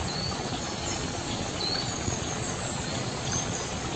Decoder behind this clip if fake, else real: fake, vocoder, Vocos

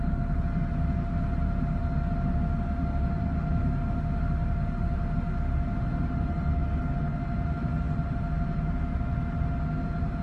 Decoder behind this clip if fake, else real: real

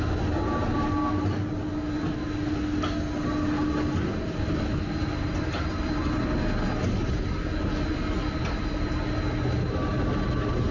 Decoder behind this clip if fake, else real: real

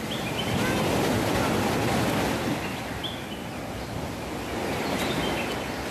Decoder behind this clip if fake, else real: real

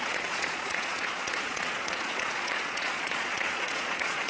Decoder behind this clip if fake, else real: fake, vocoder, Vocos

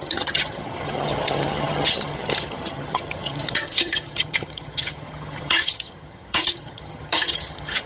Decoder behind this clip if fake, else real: fake, vocoder, HiFi-GAN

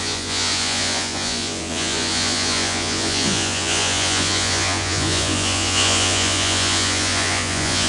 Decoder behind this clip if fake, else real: fake, vocoder, Vocos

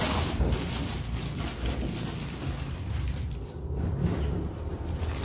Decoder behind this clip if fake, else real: real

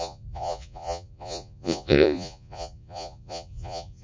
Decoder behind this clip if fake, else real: fake, vocoder, Vocos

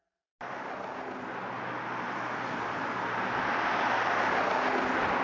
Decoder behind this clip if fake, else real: real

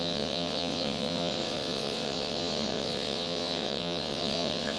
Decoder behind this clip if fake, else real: fake, vocoder, WaveNeXt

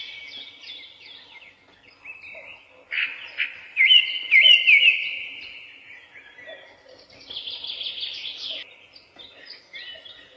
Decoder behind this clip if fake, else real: real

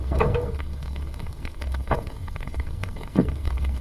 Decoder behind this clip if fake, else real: fake, codec, SNAC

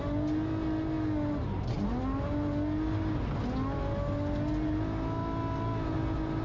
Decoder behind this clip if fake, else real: real